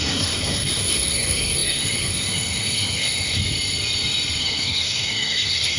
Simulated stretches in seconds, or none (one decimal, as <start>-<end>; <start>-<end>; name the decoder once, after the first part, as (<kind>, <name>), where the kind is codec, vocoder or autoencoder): 0.0-3.4 (codec, SNAC); 4.4-5.8